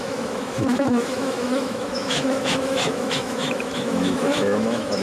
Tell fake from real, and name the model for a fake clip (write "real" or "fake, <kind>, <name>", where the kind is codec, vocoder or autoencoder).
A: fake, autoencoder, DAC-VAE